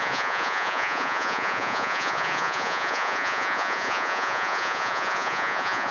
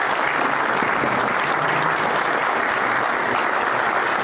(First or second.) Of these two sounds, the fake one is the first